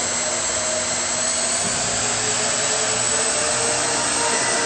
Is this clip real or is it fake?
real